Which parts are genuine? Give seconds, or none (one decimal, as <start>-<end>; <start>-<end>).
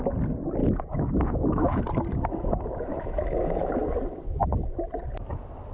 0.0-0.6; 1.8-2.9; 3.7-5.7